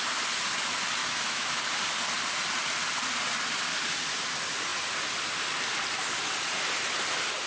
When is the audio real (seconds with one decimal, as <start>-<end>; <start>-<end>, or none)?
0.0-1.0; 1.6-7.5